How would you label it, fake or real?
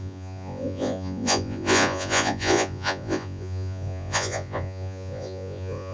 fake